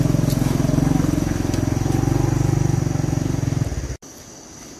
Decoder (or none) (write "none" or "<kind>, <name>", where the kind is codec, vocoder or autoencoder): none